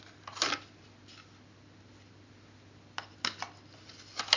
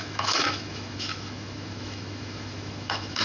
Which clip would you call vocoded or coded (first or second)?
second